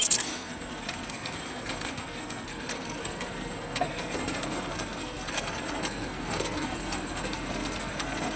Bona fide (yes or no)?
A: no